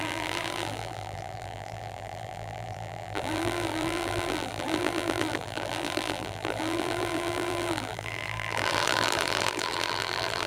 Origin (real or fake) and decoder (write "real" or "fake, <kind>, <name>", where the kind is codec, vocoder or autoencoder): fake, vocoder, BigVGAN v2